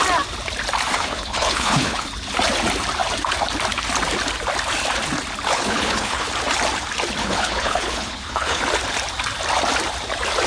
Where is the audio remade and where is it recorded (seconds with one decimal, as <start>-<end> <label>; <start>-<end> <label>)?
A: 0.0-0.9 recorded; 0.9-2.1 remade; 2.1-5.5 recorded; 5.5-6.3 remade; 6.3-7.2 recorded; 7.2-8.6 remade; 8.6-10.5 recorded